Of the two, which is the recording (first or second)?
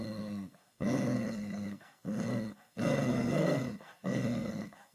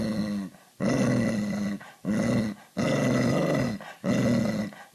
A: second